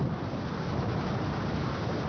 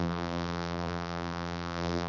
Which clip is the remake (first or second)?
second